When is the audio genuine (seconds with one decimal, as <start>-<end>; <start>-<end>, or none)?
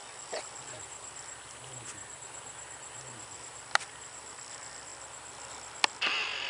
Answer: 0.0-6.5